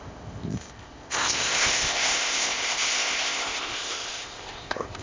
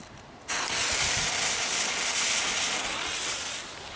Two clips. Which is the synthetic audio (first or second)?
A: first